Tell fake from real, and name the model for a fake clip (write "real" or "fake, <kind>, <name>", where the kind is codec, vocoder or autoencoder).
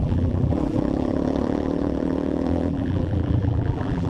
fake, vocoder, BigVGAN v2